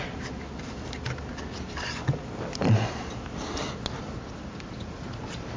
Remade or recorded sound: recorded